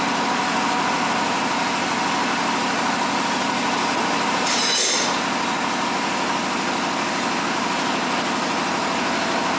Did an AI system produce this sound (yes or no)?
no